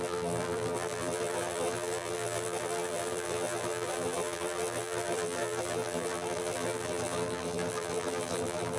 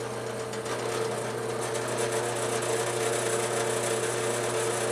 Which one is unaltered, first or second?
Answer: second